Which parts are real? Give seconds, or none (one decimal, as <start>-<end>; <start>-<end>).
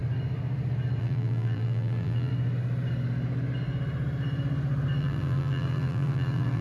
0.0-1.0; 2.3-5.0